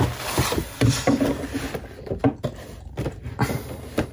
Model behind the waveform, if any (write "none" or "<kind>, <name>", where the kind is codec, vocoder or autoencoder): none